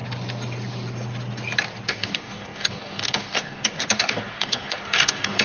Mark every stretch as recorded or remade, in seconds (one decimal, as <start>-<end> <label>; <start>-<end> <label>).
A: 0.0-1.9 recorded; 1.9-5.4 remade